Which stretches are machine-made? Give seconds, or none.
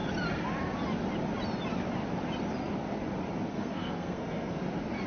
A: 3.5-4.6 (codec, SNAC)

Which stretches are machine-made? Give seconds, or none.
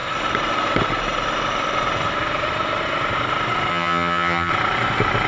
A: 3.7-4.5 (vocoder, HiFi-GAN)